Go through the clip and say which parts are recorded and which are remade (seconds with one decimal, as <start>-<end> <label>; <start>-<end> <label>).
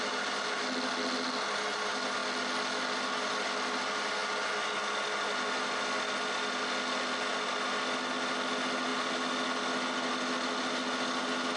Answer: 0.0-11.6 recorded